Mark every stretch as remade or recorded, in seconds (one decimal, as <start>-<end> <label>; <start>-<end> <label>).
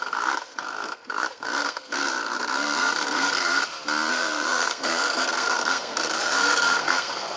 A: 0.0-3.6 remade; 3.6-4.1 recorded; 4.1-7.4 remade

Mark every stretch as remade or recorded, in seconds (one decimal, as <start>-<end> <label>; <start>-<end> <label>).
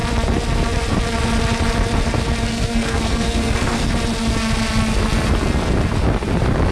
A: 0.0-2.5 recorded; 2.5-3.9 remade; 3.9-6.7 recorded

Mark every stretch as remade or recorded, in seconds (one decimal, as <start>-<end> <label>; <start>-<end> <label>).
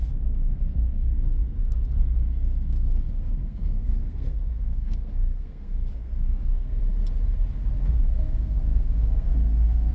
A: 0.0-6.8 remade; 6.8-7.8 recorded; 7.8-9.9 remade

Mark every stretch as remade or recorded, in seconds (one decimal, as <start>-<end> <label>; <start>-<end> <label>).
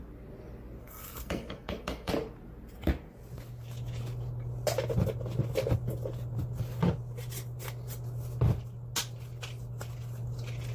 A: 0.0-0.8 recorded; 0.8-2.1 remade; 2.1-10.7 recorded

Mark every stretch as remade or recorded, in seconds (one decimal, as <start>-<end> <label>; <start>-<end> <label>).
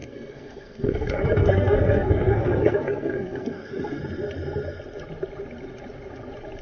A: 0.0-4.0 remade; 4.0-6.6 recorded